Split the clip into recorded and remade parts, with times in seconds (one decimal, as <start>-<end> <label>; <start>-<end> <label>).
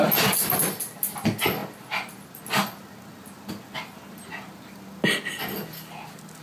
0.0-6.4 recorded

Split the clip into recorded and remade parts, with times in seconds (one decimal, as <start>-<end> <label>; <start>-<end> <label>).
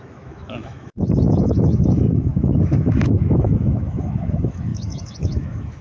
0.0-5.8 remade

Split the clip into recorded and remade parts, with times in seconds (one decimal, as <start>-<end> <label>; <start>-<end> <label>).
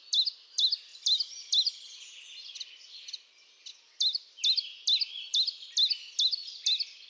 0.0-7.1 recorded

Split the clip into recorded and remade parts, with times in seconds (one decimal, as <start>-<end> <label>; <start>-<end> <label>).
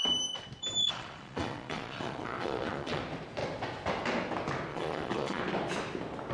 0.0-0.8 recorded; 0.8-3.0 remade; 3.0-4.7 recorded; 4.7-5.4 remade; 5.4-6.3 recorded